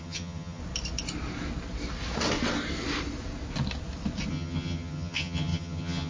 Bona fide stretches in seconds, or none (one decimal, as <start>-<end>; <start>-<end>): 0.6-4.3